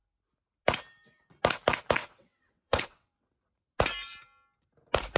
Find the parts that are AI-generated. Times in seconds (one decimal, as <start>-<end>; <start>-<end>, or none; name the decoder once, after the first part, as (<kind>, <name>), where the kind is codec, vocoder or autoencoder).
2.0-3.3 (vocoder, WaveNeXt)